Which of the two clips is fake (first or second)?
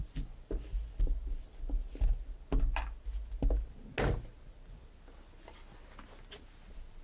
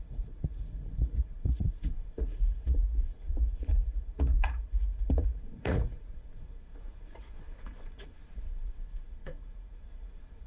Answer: second